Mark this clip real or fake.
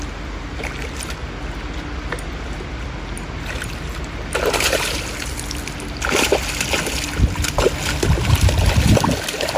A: real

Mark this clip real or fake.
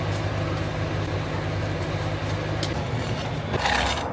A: real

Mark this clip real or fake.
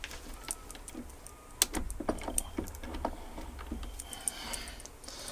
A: real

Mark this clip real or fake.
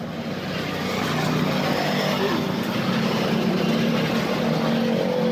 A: real